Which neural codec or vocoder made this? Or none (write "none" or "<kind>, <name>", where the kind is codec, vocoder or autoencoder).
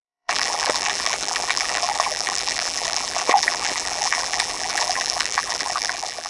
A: vocoder, BigVGAN v2